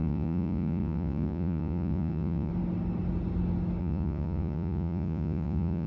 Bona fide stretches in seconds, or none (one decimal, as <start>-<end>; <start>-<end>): 2.5-3.8